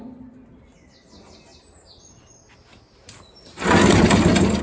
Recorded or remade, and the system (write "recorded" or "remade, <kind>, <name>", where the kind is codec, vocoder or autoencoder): recorded